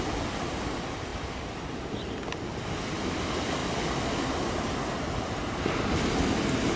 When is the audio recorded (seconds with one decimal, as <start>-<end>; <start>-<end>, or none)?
0.0-6.8